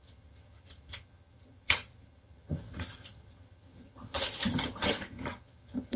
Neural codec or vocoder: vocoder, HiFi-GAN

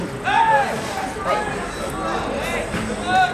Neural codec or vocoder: none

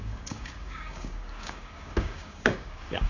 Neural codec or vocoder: codec, DAC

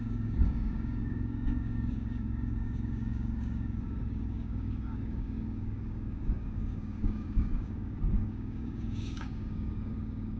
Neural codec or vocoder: codec, DAC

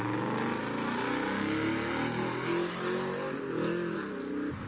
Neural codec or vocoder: none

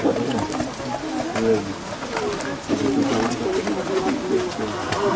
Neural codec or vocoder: none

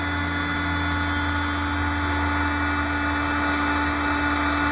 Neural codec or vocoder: none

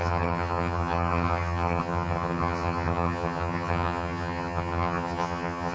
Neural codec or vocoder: vocoder, HiFi-GAN